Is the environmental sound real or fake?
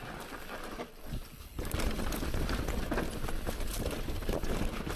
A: real